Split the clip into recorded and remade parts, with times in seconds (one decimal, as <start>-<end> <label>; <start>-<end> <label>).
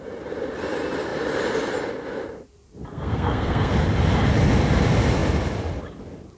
0.0-2.8 recorded; 2.8-3.7 remade; 3.7-6.4 recorded